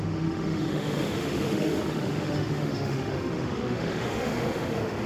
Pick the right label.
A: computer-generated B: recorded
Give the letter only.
A